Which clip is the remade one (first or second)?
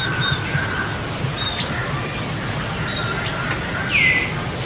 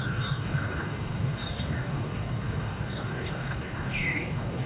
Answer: second